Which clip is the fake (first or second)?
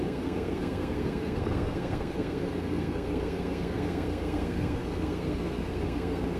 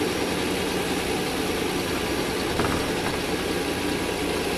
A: first